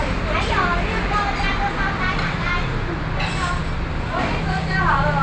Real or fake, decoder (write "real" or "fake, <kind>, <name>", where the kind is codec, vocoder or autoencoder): real